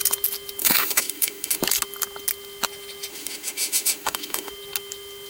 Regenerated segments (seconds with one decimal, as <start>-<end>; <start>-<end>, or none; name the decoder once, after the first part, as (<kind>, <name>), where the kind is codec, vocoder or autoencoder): 0.6-1.6 (autoencoder, DAC-VAE); 3.1-4.5

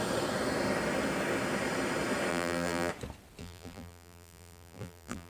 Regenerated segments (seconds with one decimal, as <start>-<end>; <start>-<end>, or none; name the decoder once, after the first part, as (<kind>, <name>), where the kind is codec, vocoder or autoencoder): 2.3-2.9 (vocoder, BigVGAN v2); 3.4-5.3